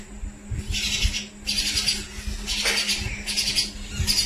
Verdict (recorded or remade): recorded